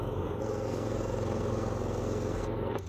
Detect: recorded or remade remade